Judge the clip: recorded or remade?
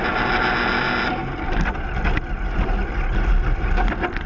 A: recorded